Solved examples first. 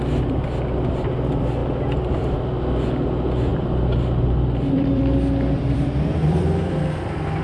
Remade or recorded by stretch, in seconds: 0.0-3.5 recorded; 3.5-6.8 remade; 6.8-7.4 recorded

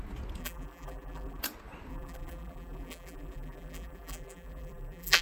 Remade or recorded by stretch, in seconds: 0.0-0.4 recorded; 0.4-1.4 remade; 1.4-1.9 recorded; 1.9-5.2 remade

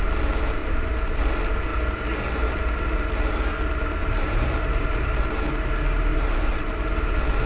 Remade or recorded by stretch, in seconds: 0.0-0.6 recorded; 0.6-1.2 remade; 1.2-4.0 recorded; 4.0-5.1 remade; 5.1-6.1 recorded; 6.1-6.9 remade; 6.9-7.5 recorded